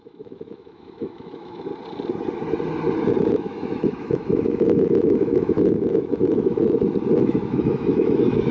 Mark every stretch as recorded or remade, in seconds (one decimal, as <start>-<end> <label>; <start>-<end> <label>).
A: 0.0-1.7 remade; 1.7-3.3 recorded; 3.3-6.6 remade; 6.6-7.2 recorded; 7.2-8.5 remade